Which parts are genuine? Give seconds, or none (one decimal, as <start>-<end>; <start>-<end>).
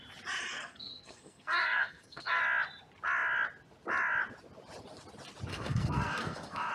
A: 0.0-0.5; 2.4-5.5